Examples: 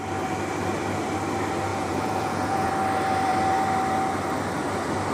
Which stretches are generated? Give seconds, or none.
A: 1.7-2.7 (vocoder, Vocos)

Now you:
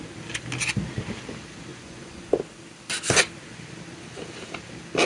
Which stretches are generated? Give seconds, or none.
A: 1.7-2.3 (vocoder, Vocos)

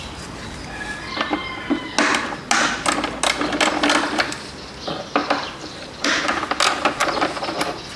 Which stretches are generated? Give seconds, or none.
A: 5.2-6.2 (vocoder, BigVGAN v2)

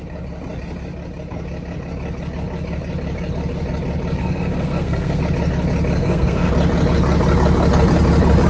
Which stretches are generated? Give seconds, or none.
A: 4.2-5.2 (codec, SNAC); 6.0-6.5

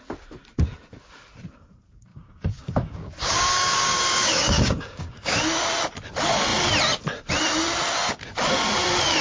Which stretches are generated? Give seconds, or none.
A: 2.1-5.4 (codec, DAC)

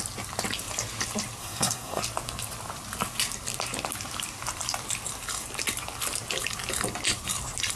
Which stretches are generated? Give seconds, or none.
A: 1.4-2.0 (codec, SNAC)